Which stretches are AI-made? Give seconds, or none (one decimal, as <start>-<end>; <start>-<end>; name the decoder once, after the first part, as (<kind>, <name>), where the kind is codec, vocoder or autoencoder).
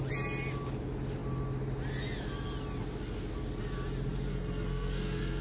4.3-5.4 (codec, SNAC)